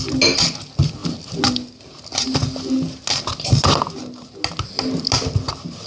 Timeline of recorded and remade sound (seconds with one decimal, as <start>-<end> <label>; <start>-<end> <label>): 0.0-5.9 recorded